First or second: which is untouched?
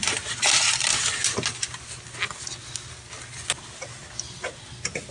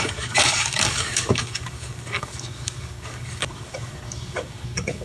first